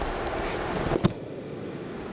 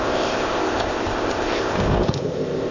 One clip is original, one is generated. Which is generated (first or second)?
second